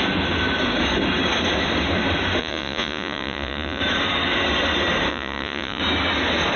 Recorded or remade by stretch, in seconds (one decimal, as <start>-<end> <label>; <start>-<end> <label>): 0.0-2.4 recorded; 2.4-3.8 remade; 3.8-5.1 recorded; 5.1-5.8 remade; 5.8-6.6 recorded